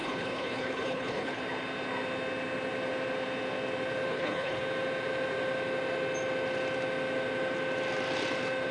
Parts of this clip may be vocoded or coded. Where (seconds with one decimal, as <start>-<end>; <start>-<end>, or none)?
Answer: 0.0-1.4; 4.1-4.6